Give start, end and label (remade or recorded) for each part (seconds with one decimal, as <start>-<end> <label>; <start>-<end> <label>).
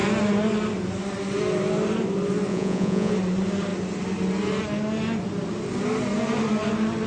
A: 0.0-2.5 recorded; 2.5-3.1 remade; 3.1-7.1 recorded